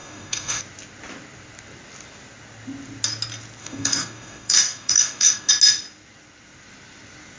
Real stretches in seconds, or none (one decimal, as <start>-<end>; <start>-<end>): 0.6-3.6; 5.5-7.4